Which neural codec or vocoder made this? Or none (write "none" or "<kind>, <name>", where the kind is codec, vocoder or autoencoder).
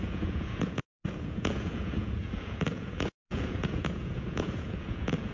vocoder, Vocos